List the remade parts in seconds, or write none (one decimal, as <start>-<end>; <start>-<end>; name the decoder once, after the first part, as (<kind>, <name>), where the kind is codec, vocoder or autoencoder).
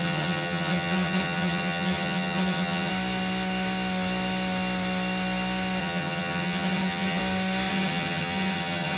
0.0-2.9 (vocoder, HiFi-GAN); 5.8-7.2; 7.7-9.0